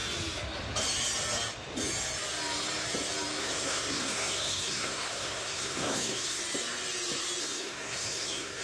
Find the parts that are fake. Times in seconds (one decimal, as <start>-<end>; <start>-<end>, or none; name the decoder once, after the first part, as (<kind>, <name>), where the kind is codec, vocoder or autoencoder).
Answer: 3.4-6.4 (codec, SNAC); 7.4-8.6